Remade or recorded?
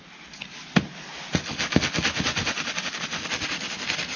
recorded